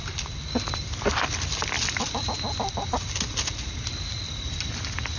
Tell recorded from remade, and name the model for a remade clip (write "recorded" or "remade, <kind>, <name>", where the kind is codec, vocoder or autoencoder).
recorded